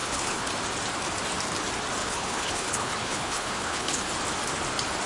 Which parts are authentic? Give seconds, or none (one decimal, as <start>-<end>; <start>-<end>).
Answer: 0.5-2.0; 4.0-5.1